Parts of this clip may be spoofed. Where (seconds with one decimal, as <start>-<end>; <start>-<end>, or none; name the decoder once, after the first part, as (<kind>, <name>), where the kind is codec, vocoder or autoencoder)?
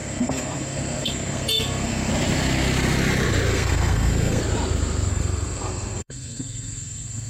0.0-2.1 (codec, SNAC); 3.5-4.4; 5.1-7.3